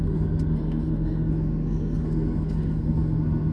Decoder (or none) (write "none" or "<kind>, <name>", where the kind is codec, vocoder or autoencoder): codec, SNAC